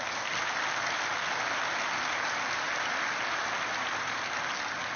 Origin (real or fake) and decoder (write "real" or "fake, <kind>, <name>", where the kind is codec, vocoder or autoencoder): real